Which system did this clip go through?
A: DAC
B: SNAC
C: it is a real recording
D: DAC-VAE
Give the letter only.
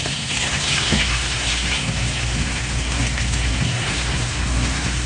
B